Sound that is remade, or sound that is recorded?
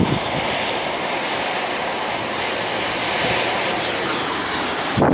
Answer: recorded